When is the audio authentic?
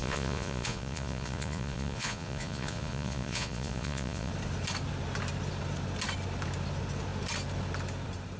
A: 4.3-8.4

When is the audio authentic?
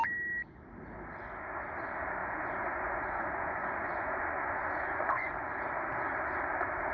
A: 0.0-2.2; 5.6-6.9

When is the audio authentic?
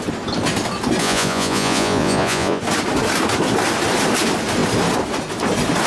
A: 0.0-1.0; 2.6-5.9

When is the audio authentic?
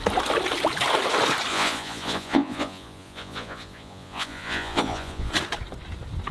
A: 0.0-1.5; 5.3-6.3